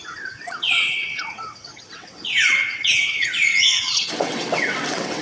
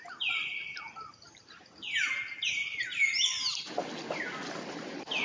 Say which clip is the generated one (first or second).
first